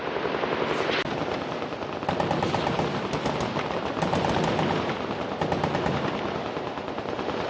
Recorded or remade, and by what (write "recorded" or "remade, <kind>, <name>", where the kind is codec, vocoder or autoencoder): recorded